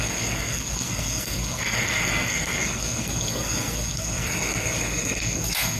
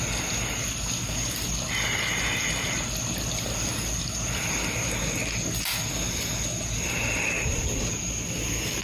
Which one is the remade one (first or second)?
first